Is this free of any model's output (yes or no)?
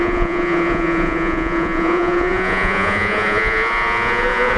no